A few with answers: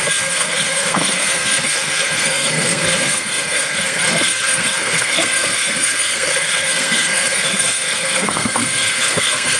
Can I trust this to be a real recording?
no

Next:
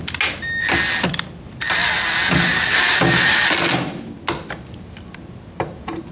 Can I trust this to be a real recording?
yes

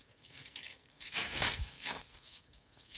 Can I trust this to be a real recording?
no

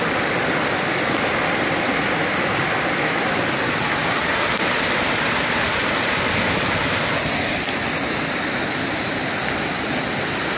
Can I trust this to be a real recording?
no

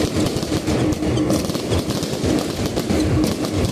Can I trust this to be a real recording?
yes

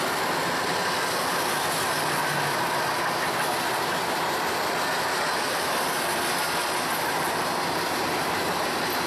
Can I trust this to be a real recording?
yes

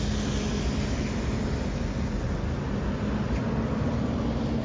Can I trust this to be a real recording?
yes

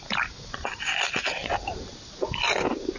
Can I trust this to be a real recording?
yes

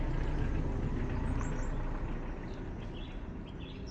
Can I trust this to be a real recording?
yes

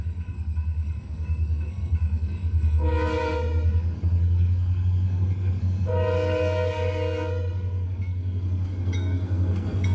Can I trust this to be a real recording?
no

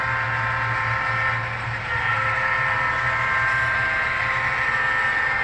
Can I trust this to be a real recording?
yes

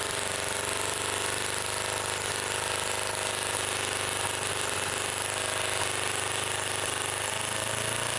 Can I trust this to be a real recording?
yes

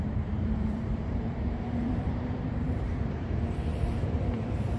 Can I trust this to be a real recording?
no